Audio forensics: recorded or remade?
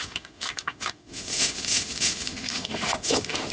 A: remade